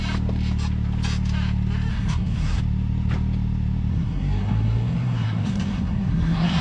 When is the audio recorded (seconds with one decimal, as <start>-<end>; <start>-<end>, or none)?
0.0-1.9; 2.6-3.9

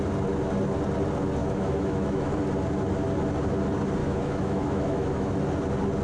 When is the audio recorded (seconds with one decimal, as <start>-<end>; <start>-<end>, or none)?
0.0-1.4; 2.4-4.0; 5.3-6.0

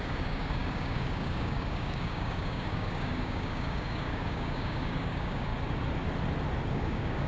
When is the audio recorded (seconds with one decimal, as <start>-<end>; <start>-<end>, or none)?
5.5-6.7